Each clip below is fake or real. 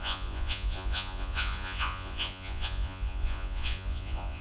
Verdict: fake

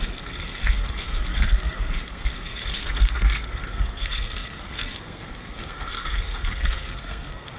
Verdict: fake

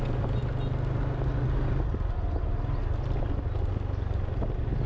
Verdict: real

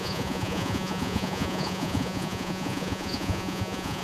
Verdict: fake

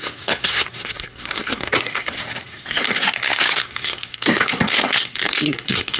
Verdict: fake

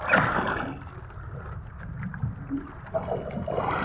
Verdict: real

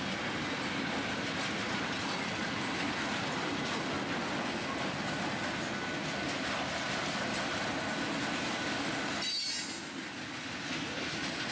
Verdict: real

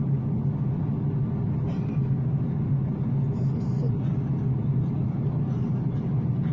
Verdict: real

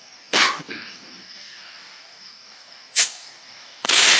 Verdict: fake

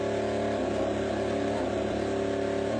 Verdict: real